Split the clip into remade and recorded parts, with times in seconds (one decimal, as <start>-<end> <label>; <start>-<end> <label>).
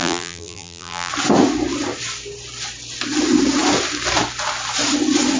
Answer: 0.0-1.1 remade; 1.1-5.4 recorded